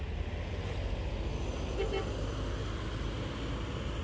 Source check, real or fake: real